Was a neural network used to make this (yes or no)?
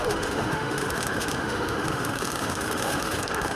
yes